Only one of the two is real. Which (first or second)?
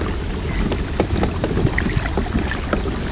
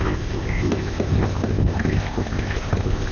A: first